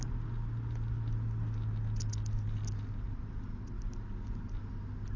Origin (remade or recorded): recorded